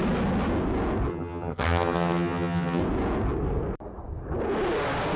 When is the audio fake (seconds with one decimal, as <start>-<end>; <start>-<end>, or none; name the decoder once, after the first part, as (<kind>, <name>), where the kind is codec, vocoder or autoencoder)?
1.1-2.8 (vocoder, HiFi-GAN)